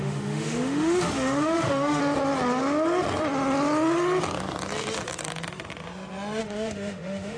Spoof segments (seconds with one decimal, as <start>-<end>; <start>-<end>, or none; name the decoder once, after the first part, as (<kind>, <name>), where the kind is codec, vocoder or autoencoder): 0.0-2.0 (autoencoder, DAC-VAE); 6.4-7.4

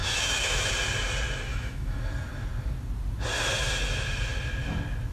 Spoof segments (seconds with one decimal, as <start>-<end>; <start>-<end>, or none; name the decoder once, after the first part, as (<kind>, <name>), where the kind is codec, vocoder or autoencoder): 0.0-0.7 (autoencoder, DAC-VAE); 1.5-2.0

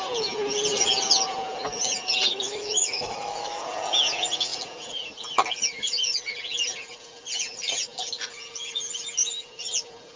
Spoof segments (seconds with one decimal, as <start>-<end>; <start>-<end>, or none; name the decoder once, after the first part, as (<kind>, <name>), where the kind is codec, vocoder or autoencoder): 2.3-3.6 (autoencoder, DAC-VAE)

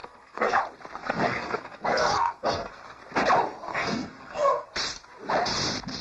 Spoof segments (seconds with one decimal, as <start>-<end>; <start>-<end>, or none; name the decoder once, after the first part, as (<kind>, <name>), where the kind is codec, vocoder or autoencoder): 0.0-0.6 (codec, SNAC); 1.0-3.0; 3.7-4.7

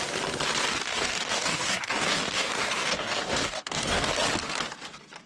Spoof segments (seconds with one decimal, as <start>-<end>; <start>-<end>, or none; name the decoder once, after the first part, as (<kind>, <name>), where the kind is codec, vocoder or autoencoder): 0.9-4.1 (codec, DAC)

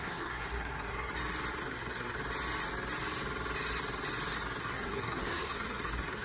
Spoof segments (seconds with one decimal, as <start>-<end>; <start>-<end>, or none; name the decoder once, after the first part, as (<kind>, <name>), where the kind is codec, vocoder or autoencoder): 0.0-1.1 (codec, SNAC); 1.6-2.2; 4.6-6.2